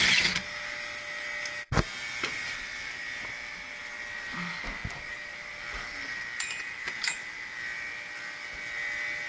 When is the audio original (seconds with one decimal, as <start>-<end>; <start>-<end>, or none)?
0.0-9.3